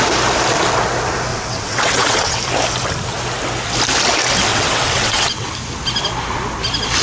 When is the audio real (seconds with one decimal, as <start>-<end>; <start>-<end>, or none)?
0.0-1.3; 2.4-4.5; 5.5-7.0